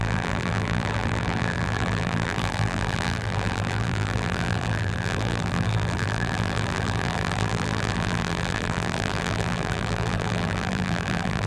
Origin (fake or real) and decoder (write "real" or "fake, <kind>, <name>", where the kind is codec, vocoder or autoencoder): fake, vocoder, BigVGAN v2